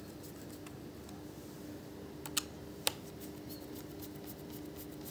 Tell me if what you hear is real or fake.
real